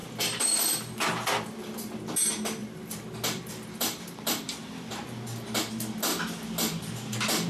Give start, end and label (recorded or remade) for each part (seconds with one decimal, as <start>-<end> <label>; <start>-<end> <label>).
0.0-0.9 remade; 0.9-2.6 recorded; 2.6-4.9 remade; 4.9-7.5 recorded